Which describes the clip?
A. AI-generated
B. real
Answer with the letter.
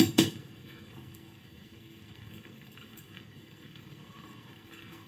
A